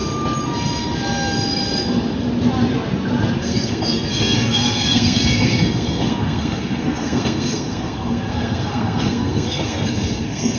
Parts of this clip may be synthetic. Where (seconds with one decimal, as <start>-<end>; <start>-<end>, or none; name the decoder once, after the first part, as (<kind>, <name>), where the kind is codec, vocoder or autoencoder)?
3.4-10.6 (codec, SNAC)